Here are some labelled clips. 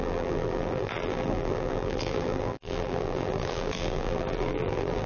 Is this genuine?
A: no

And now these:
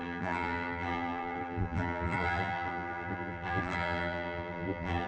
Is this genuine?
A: no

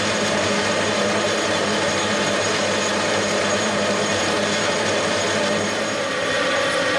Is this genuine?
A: no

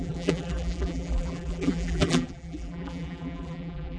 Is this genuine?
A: no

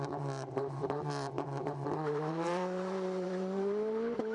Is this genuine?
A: no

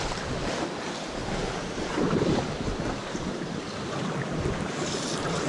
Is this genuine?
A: no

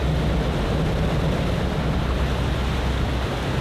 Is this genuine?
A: yes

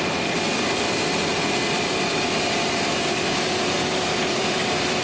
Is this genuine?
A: no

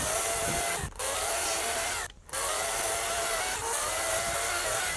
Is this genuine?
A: no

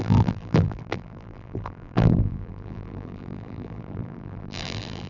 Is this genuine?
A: no